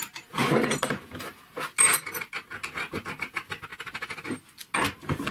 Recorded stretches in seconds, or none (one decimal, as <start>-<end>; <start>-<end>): 0.0-5.3

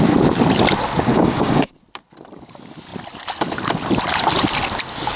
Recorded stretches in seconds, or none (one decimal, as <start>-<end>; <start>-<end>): 0.0-1.1; 1.7-5.2

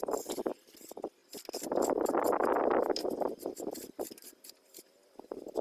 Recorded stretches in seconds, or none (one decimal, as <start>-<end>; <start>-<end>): 0.0-5.6

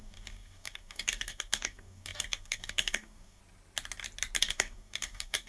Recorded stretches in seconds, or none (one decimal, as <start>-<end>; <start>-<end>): 3.4-4.4

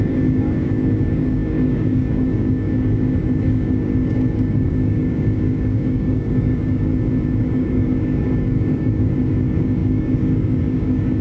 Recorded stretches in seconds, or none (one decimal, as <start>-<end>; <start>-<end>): 6.9-7.4

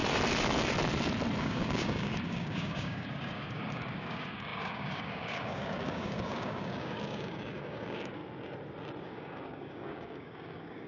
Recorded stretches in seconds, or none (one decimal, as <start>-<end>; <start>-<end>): 0.0-1.4; 8.2-9.0